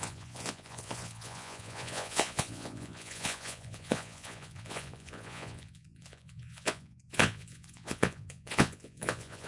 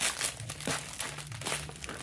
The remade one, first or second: first